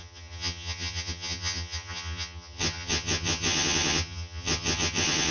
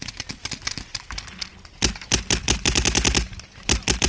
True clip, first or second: second